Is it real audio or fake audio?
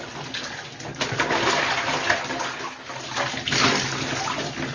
real